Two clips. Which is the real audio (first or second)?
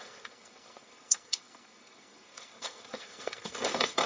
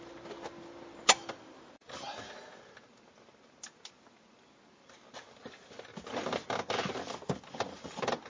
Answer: second